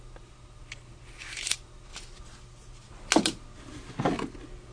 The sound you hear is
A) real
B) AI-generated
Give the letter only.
A